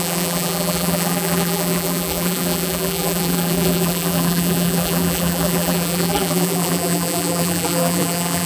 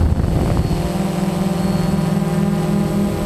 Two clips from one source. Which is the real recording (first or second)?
second